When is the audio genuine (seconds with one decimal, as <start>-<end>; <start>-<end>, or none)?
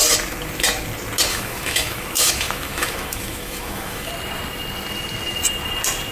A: 0.0-1.3; 4.1-6.1